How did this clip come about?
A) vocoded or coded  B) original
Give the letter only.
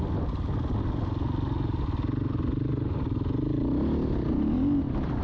B